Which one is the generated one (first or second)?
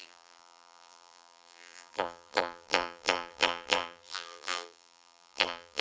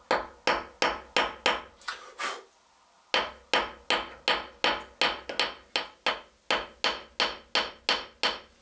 first